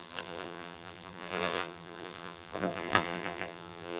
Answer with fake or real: fake